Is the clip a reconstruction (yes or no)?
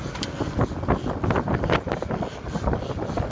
no